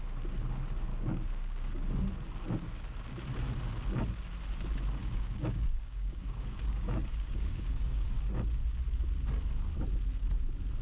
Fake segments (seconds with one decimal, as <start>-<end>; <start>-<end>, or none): 0.9-1.9; 5.0-8.1